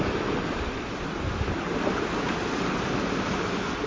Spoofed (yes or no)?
no